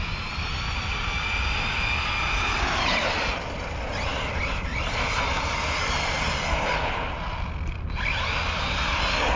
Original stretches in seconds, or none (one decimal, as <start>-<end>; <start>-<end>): 0.0-9.4